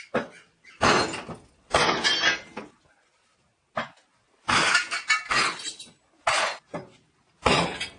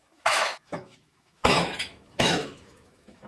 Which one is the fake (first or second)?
second